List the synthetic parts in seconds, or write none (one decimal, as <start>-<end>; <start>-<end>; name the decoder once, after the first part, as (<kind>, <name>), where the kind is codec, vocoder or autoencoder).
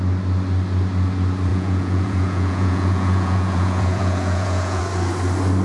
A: 1.5-4.8 (vocoder, Vocos)